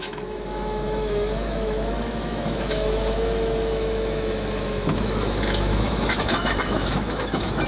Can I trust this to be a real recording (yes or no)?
no